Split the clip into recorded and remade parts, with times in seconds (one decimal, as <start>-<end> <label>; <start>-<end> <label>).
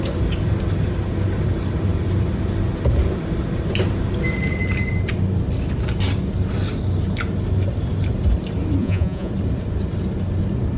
0.0-8.8 recorded; 8.8-9.3 remade; 9.3-10.8 recorded